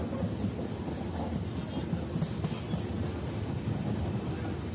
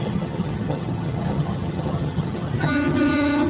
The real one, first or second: first